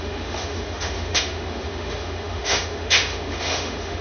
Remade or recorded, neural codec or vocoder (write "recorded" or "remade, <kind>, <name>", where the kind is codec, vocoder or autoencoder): remade, autoencoder, DAC-VAE